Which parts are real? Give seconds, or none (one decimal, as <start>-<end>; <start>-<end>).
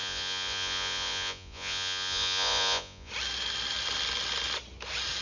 3.1-5.2